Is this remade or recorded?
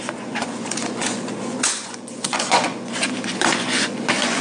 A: remade